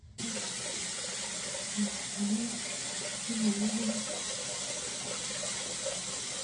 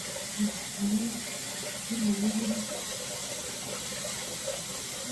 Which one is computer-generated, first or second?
second